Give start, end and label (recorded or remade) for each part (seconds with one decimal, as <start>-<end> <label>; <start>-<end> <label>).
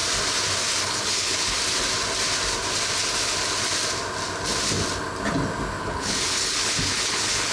0.0-0.8 recorded; 0.8-1.6 remade; 1.6-5.8 recorded; 5.8-7.5 remade